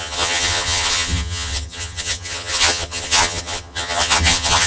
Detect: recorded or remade remade